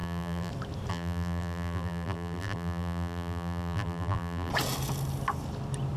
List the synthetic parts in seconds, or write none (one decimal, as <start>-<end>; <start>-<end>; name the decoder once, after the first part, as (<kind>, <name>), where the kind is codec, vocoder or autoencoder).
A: 0.0-0.5 (vocoder, BigVGAN v2); 0.9-4.5